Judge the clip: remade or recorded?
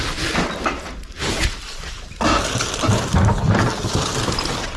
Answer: remade